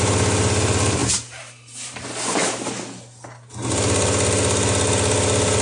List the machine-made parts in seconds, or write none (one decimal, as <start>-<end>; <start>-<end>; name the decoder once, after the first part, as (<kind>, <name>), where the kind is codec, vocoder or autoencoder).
1.0-2.7 (vocoder, BigVGAN v2)